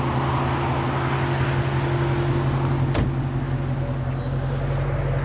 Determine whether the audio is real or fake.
real